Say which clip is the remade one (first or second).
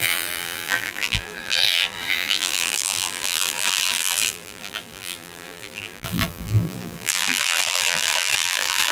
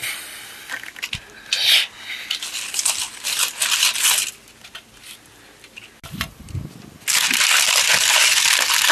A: first